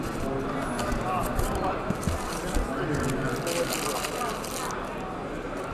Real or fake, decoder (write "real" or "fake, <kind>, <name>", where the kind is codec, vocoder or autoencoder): real